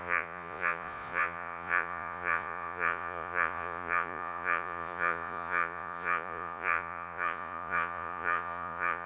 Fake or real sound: fake